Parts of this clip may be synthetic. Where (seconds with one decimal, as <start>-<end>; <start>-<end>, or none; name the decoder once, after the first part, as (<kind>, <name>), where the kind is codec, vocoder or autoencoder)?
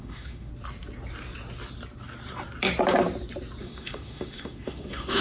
0.0-0.5 (autoencoder, DAC-VAE); 3.6-5.2